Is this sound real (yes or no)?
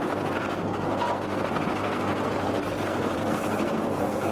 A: no